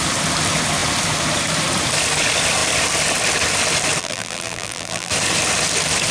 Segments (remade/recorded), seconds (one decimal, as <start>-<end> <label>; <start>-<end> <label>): 0.0-4.0 recorded; 4.0-5.1 remade; 5.1-6.1 recorded